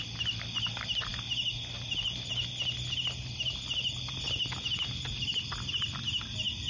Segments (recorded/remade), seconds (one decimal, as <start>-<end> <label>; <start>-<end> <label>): 0.0-6.7 recorded